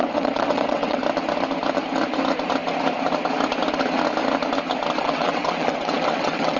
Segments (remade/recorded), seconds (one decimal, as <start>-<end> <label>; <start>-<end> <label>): 0.0-1.0 remade; 1.0-5.0 recorded; 5.0-6.6 remade